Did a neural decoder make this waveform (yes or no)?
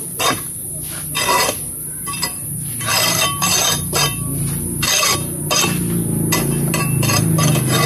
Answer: no